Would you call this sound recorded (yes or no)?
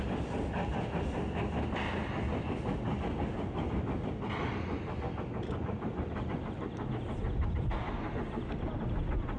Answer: yes